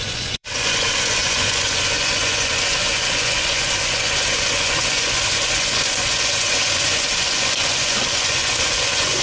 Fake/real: fake